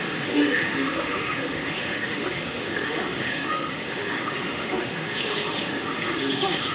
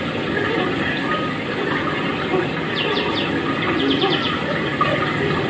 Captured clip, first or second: second